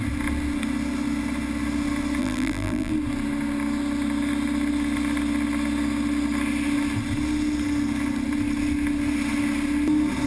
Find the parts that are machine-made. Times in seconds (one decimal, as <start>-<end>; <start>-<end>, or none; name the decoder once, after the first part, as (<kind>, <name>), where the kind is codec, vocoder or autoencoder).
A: 2.2-2.9 (vocoder, BigVGAN v2)